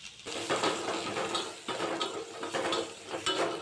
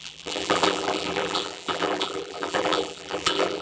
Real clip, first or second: first